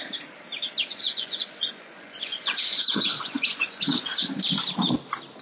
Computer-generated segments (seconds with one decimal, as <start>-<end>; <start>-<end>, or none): 0.9-4.1